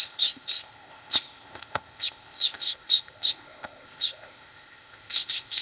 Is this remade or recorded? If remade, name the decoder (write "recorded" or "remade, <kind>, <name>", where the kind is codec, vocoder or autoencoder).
remade, codec, ZipCodec